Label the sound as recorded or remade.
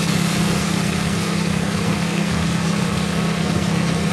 remade